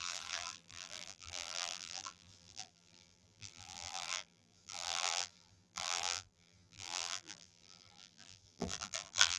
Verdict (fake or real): fake